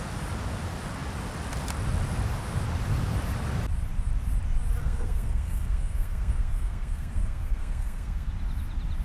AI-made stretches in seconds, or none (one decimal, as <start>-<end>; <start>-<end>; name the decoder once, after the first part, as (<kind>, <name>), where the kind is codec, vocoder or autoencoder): 4.8-8.3 (codec, SNAC)